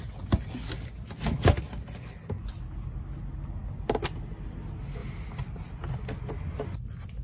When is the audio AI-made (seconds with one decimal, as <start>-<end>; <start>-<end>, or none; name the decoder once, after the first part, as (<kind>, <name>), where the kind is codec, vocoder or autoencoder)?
none